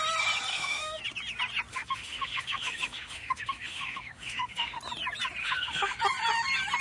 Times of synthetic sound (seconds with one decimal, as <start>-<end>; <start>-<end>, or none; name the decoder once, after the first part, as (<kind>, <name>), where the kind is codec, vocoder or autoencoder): 0.5-1.0 (autoencoder, DAC-VAE); 1.7-4.8; 5.4-6.0